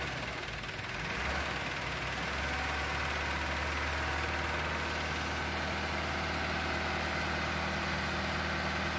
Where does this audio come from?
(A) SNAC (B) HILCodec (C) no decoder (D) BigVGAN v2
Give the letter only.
C